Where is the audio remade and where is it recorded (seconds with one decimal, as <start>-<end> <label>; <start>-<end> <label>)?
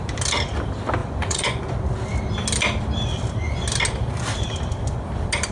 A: 0.0-1.0 recorded; 1.0-1.7 remade; 1.7-5.5 recorded